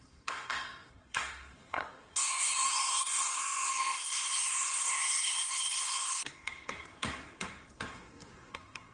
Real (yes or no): no